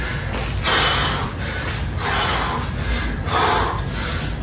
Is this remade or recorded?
recorded